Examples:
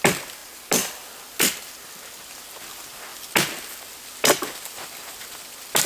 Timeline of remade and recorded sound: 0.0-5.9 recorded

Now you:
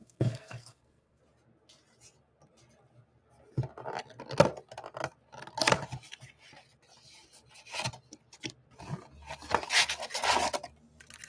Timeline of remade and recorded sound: 0.0-1.2 remade; 1.2-11.3 recorded

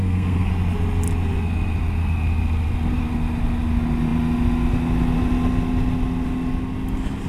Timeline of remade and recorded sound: 0.0-0.5 remade; 0.5-7.3 recorded

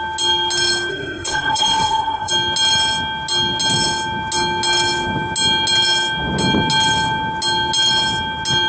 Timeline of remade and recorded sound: 0.0-0.9 recorded; 0.9-2.3 remade; 2.3-8.7 recorded

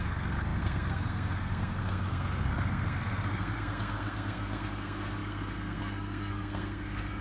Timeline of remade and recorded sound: 0.0-7.2 remade

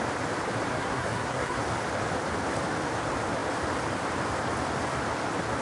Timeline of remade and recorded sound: 0.0-0.7 recorded; 0.7-1.6 remade; 1.6-5.6 recorded

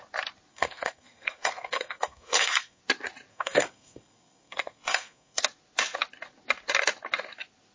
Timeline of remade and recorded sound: 0.0-0.5 recorded; 0.5-2.8 remade; 2.8-3.3 recorded; 3.3-5.4 remade; 5.4-7.7 recorded

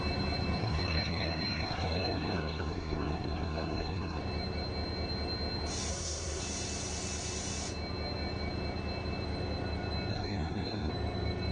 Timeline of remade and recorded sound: 0.0-0.6 recorded; 0.6-4.2 remade; 4.2-5.9 recorded; 5.9-6.4 remade; 6.4-10.1 recorded; 10.1-10.9 remade; 10.9-11.5 recorded